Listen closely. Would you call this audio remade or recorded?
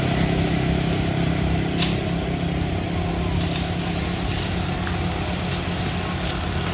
recorded